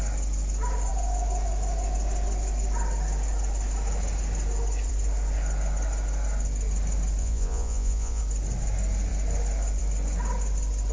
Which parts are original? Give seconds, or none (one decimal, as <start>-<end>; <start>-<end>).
0.0-7.2; 8.2-10.9